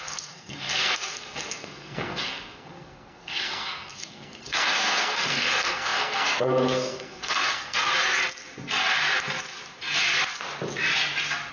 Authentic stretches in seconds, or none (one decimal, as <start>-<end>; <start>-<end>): 7.9-11.5